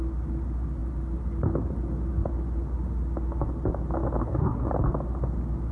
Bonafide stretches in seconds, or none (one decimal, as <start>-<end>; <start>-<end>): 0.0-4.2; 4.7-5.7